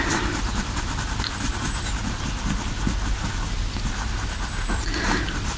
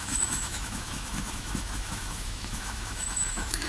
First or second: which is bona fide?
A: first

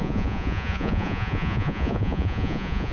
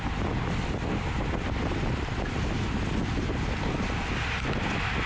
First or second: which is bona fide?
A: second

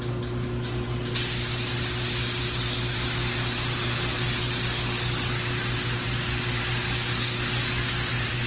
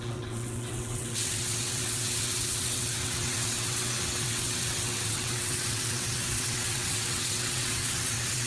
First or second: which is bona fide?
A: first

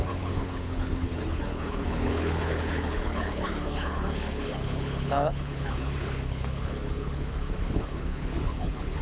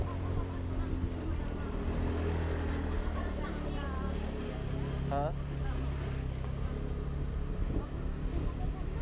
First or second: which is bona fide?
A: second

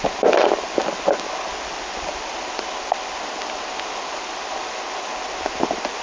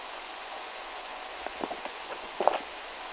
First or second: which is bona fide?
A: first